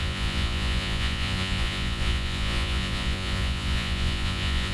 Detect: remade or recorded remade